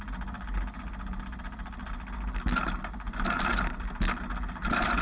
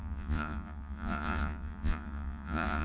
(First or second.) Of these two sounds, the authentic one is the first